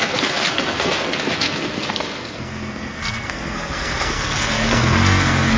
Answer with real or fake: fake